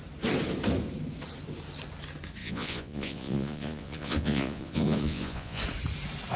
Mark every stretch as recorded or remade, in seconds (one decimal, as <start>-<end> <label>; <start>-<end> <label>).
0.0-2.4 recorded; 2.4-5.6 remade; 5.6-6.4 recorded